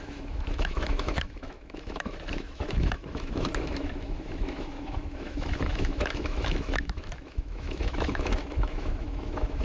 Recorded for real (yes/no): no